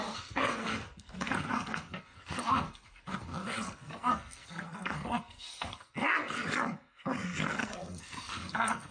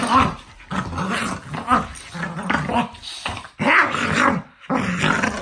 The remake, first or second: first